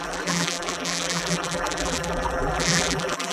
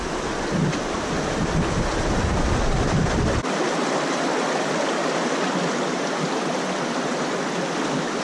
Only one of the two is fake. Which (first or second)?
first